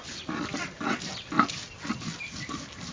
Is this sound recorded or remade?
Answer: recorded